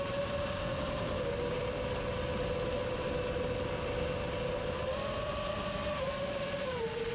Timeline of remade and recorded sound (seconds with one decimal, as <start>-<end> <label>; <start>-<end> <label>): 0.0-7.1 recorded